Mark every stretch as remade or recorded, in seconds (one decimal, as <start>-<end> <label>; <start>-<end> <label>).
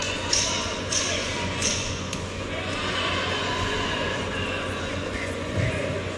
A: 0.0-6.2 remade